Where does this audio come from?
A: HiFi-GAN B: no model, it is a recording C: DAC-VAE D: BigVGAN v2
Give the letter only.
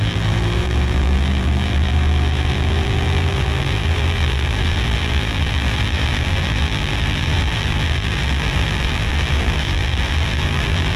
D